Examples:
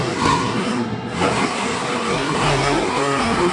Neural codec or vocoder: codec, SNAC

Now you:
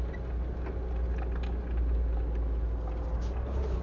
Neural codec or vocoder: none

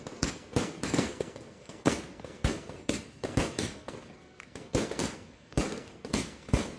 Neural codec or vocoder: codec, SNAC